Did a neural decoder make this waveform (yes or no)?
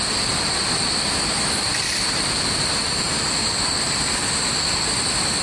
no